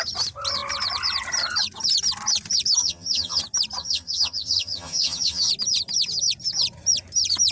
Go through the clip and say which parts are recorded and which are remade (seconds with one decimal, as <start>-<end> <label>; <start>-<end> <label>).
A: 0.0-2.8 recorded; 2.8-3.4 remade; 3.4-3.8 recorded; 3.8-5.5 remade; 5.5-7.5 recorded